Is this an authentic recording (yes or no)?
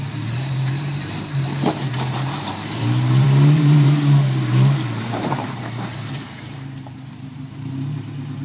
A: no